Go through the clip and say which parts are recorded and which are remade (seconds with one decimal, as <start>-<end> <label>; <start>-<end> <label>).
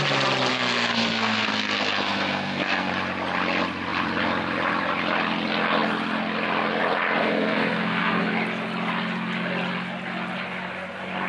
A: 0.0-0.5 recorded; 0.5-2.9 remade; 2.9-7.2 recorded; 7.2-8.3 remade; 8.3-11.3 recorded